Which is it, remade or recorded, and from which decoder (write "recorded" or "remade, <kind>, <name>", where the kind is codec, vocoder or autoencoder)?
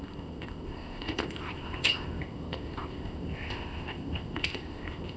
remade, codec, ZipCodec